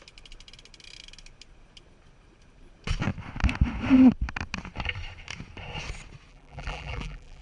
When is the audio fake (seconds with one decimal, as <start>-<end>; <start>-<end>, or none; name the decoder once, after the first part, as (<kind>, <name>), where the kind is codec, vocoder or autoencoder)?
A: 6.3-7.4 (vocoder, BigVGAN v2)